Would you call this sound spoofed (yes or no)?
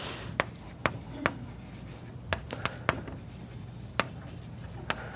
no